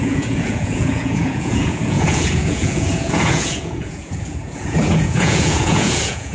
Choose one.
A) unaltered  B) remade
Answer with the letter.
B